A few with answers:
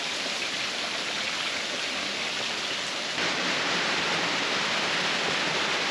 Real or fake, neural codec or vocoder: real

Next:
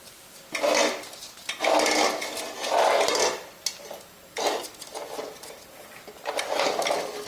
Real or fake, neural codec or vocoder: real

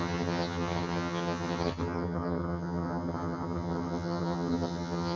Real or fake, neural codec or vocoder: fake, vocoder, HiFi-GAN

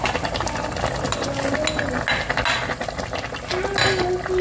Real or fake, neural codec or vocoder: real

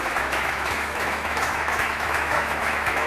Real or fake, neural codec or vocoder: fake, autoencoder, DAC-VAE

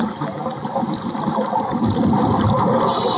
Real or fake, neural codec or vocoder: real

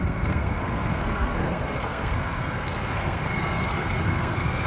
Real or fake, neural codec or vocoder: fake, codec, SNAC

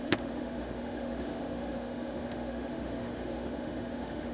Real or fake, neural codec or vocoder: fake, autoencoder, DAC-VAE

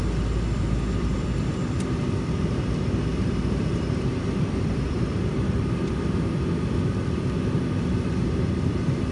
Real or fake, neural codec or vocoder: fake, vocoder, BigVGAN v2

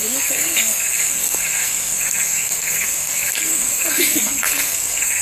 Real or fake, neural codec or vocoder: fake, codec, SNAC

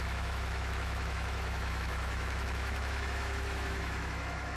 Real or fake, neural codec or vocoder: fake, autoencoder, DAC-VAE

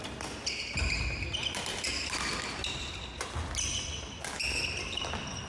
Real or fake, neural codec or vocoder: real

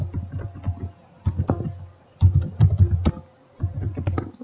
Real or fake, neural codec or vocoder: real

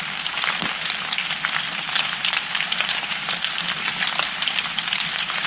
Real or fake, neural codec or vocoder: real